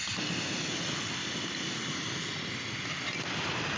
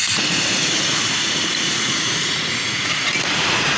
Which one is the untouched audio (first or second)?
first